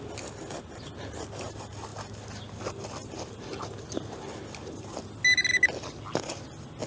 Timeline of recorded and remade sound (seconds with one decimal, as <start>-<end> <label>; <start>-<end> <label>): 0.0-6.9 recorded